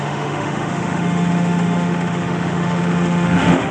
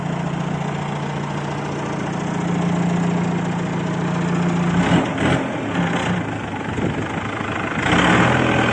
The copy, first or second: first